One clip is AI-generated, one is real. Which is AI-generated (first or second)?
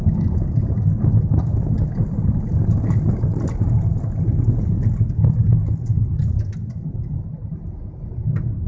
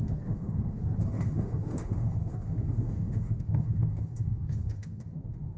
second